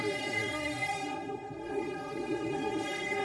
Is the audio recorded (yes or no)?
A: no